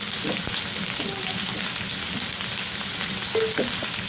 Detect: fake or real real